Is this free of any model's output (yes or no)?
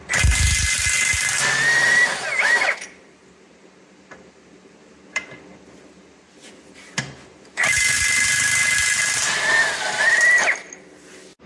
yes